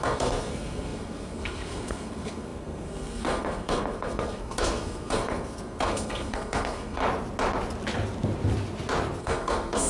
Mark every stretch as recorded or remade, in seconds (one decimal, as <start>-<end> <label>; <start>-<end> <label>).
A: 0.0-7.0 remade; 7.0-9.2 recorded; 9.2-9.9 remade